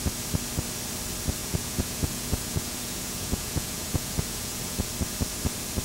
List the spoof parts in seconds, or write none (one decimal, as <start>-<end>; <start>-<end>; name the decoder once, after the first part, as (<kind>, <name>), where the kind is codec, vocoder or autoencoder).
1.4-4.9 (vocoder, Vocos)